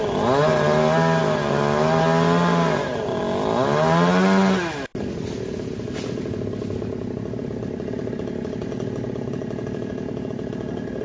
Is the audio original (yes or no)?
yes